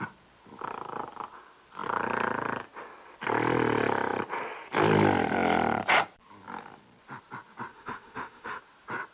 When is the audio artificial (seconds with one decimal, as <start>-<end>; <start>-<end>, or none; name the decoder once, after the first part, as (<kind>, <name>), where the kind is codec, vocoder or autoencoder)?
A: 7.7-8.6 (autoencoder, DAC-VAE)